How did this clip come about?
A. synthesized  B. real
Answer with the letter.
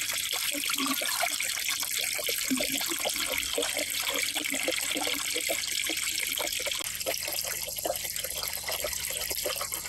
B